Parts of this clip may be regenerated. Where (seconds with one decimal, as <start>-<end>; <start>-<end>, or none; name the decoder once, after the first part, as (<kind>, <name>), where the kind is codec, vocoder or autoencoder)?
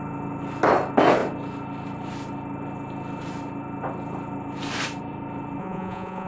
5.6-6.3 (vocoder, Vocos)